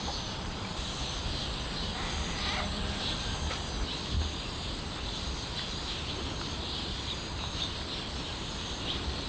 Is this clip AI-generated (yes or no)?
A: no